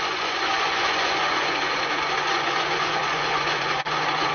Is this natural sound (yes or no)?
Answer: no